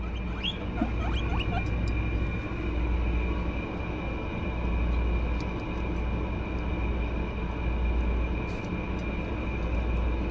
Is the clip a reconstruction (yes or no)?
no